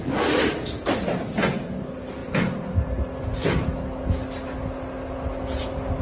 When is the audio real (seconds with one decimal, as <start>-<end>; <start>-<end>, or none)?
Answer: 0.0-6.0